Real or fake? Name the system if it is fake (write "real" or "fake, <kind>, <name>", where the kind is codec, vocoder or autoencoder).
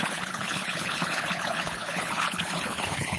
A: fake, codec, HILCodec